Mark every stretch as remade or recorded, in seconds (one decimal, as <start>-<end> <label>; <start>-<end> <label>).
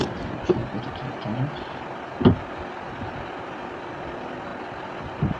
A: 0.0-0.6 remade; 0.6-3.8 recorded; 3.8-4.5 remade; 4.5-5.0 recorded; 5.0-5.4 remade